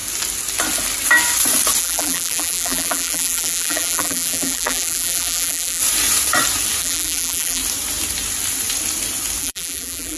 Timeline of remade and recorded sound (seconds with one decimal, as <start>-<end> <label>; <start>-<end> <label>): 0.0-1.8 recorded; 1.8-5.8 remade; 5.8-6.8 recorded; 6.8-7.6 remade; 7.6-9.4 recorded; 9.4-10.2 remade